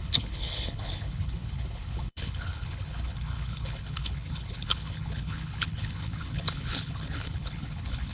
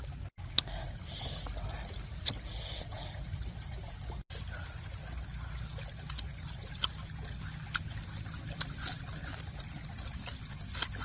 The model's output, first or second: first